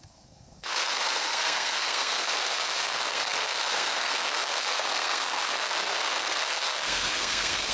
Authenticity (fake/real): fake